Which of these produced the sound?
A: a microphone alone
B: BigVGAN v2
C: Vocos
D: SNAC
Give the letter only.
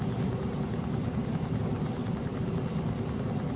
B